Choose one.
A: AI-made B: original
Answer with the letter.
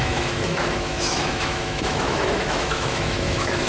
A